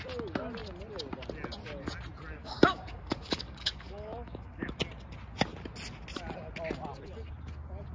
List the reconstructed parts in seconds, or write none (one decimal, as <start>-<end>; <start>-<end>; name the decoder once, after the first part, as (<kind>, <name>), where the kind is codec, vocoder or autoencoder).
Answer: 2.4-4.7 (codec, DAC)